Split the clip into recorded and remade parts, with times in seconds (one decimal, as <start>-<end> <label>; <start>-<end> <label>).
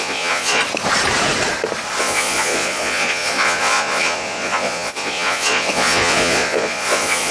0.0-0.6 remade; 0.6-2.0 recorded; 2.0-7.3 remade